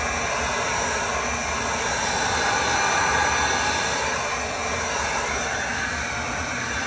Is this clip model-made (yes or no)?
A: no